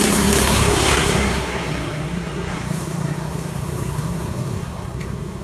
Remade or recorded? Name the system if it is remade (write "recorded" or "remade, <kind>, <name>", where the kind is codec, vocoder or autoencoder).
remade, codec, SNAC